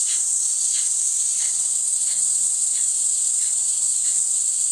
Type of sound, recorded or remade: recorded